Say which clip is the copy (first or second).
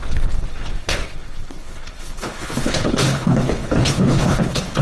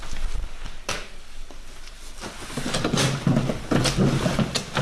first